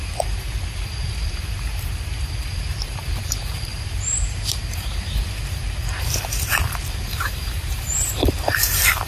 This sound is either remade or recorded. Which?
remade